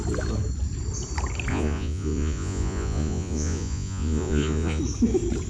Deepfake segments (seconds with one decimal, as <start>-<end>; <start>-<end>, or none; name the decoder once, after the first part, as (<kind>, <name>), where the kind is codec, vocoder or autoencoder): 1.5-4.8 (vocoder, Vocos)

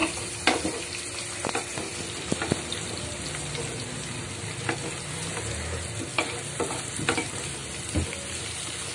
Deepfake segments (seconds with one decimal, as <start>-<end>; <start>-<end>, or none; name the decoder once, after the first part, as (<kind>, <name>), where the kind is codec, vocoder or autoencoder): none